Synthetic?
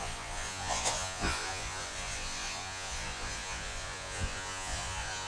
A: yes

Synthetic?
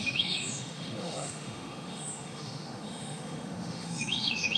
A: yes